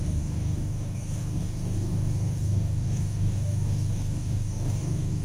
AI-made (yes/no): yes